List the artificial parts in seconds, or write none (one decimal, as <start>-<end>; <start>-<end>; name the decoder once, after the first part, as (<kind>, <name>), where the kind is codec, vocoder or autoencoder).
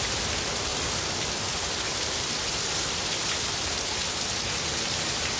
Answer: 0.7-2.5 (vocoder, BigVGAN v2)